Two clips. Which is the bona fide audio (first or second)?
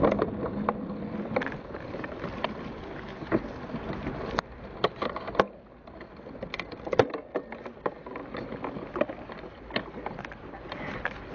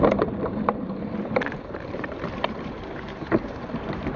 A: first